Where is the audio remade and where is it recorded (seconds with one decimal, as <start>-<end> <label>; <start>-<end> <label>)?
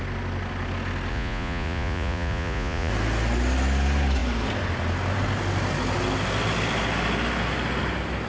0.0-1.1 recorded; 1.1-2.9 remade; 2.9-8.3 recorded